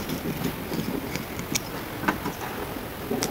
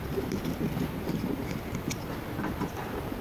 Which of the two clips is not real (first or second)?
second